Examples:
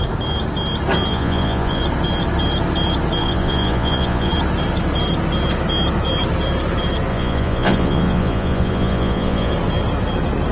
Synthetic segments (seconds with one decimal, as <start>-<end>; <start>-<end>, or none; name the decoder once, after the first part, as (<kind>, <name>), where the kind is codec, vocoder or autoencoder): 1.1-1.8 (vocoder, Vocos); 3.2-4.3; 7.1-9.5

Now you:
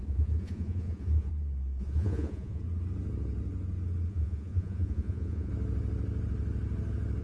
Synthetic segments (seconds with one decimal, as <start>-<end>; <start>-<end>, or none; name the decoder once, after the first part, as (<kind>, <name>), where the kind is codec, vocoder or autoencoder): 0.0-1.3 (vocoder, Vocos); 1.8-2.6; 4.1-5.5

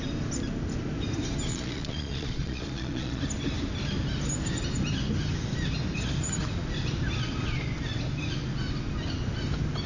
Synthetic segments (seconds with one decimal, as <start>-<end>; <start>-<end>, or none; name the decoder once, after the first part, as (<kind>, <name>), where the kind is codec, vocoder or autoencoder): 1.5-3.2 (vocoder, Vocos)